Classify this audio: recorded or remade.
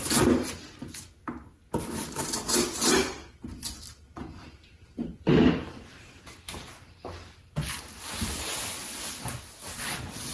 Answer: recorded